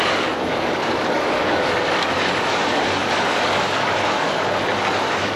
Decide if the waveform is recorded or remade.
remade